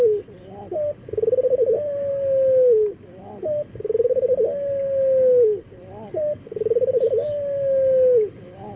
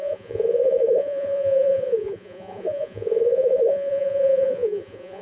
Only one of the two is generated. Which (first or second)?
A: second